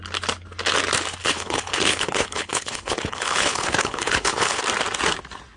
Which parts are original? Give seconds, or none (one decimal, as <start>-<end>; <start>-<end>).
0.0-1.2; 4.6-5.6